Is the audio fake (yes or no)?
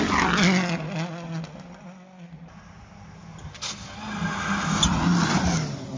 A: no